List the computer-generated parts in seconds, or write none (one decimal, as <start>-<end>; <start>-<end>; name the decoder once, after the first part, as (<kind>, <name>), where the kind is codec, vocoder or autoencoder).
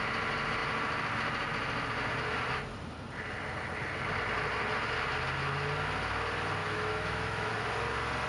6.6-7.5 (autoencoder, DAC-VAE)